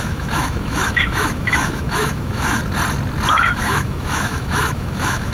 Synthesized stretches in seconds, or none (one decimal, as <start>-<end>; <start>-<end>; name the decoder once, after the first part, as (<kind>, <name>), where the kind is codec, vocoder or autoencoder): 0.0-2.6 (autoencoder, DAC-VAE); 3.3-5.3